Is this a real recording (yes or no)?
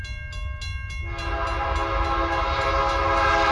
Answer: yes